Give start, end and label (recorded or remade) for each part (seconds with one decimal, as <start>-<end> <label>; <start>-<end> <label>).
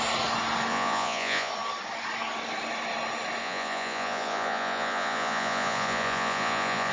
0.0-0.7 recorded; 0.7-1.5 remade; 1.5-3.4 recorded; 3.4-6.9 remade